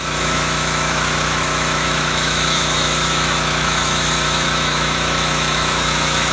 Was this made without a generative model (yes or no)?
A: no